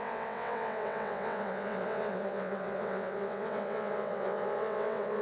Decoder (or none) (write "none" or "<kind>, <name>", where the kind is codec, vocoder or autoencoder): vocoder, WaveNeXt